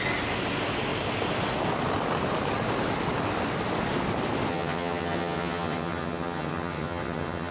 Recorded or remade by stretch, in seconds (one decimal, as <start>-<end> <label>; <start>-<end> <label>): 0.0-4.5 recorded; 4.5-7.5 remade